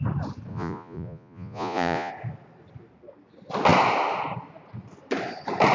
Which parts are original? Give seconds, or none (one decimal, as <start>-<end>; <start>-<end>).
0.0-0.5; 2.1-5.7

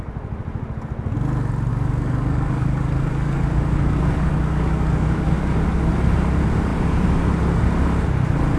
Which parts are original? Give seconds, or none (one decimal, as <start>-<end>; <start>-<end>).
0.0-1.7; 5.8-8.6

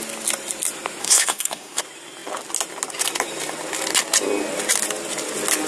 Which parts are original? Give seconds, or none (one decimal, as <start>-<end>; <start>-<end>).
0.0-1.0; 1.8-5.7

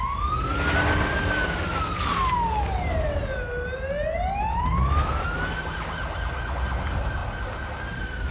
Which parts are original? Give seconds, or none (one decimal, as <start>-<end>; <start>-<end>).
0.0-8.3

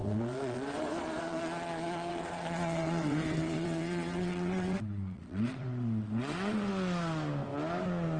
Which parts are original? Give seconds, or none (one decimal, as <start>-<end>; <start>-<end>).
1.4-2.1; 6.7-8.2

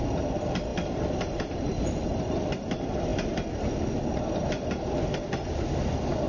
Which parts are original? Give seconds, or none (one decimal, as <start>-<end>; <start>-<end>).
0.0-6.3

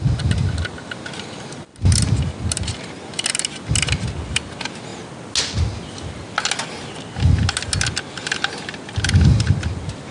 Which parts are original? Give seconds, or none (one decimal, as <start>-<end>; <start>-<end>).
0.0-10.1

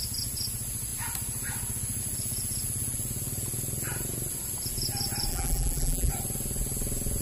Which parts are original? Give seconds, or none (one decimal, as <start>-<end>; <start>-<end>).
0.0-5.3; 6.1-7.2